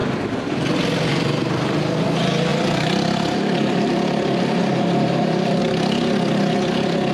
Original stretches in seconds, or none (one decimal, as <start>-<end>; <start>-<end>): 0.0-2.5; 5.6-7.1